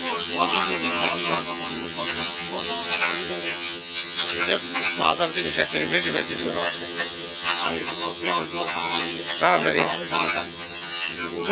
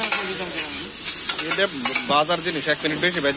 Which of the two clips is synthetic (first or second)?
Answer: first